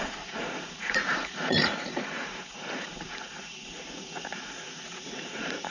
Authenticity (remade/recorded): remade